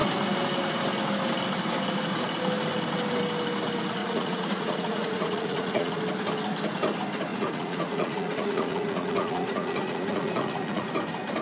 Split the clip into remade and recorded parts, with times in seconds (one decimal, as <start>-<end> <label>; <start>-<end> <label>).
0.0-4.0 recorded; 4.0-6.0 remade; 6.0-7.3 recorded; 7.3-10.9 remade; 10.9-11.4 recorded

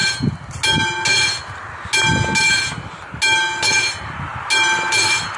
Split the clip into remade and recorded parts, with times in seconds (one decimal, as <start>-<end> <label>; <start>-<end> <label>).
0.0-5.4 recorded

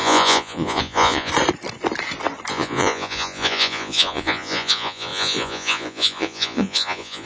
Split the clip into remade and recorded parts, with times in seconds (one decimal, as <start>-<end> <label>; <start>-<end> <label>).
0.0-1.3 remade; 1.3-2.5 recorded; 2.5-7.3 remade